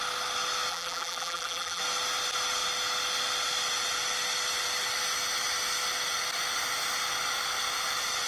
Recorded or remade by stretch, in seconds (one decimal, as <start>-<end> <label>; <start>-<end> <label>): 0.0-0.7 recorded; 0.7-1.8 remade; 1.8-8.3 recorded

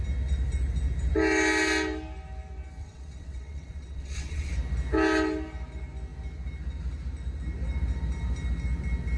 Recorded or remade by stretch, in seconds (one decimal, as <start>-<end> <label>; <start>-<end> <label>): 0.0-2.8 recorded; 2.8-4.5 remade; 4.5-9.2 recorded

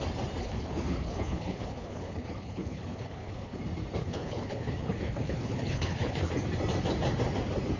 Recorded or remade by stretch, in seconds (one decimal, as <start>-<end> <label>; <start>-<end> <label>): 0.0-0.4 recorded; 0.4-3.6 remade; 3.6-4.0 recorded; 4.0-6.3 remade; 6.3-7.8 recorded

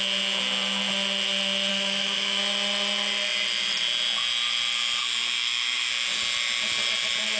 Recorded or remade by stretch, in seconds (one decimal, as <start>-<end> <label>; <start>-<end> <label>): 0.0-1.7 recorded; 1.7-2.4 remade; 2.4-5.0 recorded; 5.0-5.9 remade; 5.9-7.4 recorded

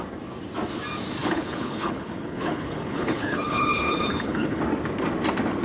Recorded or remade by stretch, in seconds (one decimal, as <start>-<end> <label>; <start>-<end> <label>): 0.0-1.2 recorded; 1.2-4.6 remade; 4.6-5.6 recorded

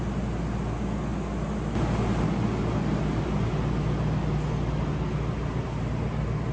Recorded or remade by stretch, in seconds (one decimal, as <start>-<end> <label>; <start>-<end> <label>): 0.0-6.5 recorded

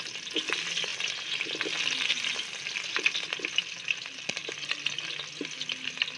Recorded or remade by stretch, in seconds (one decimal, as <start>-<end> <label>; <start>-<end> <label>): 0.0-6.2 recorded

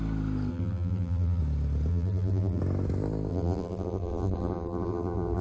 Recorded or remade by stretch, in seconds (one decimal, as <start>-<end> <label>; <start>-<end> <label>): 0.0-0.5 recorded; 0.5-1.4 remade; 1.4-1.9 recorded; 1.9-2.6 remade; 2.6-3.3 recorded; 3.3-5.4 remade